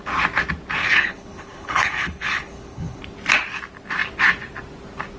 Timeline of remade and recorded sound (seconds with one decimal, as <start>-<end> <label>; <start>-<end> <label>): 0.0-0.8 recorded; 0.8-3.0 remade; 3.0-5.2 recorded